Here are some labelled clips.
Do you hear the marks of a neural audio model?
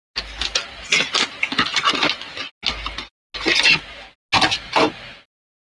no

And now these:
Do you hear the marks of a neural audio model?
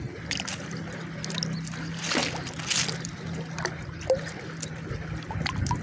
no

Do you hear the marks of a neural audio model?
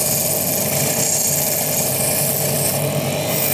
no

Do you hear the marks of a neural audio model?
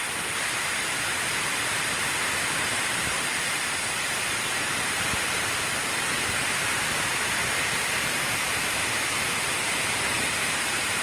yes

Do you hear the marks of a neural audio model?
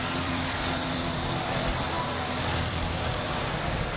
yes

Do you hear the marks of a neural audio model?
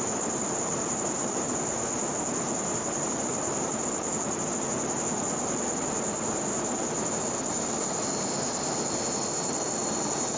yes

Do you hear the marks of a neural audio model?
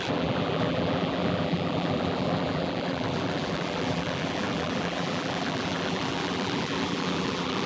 yes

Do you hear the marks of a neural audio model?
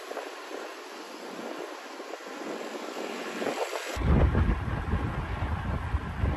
no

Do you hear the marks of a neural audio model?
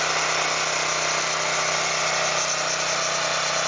no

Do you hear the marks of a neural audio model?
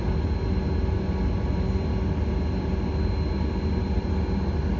no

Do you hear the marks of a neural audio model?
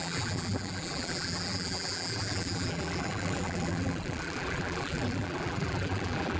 yes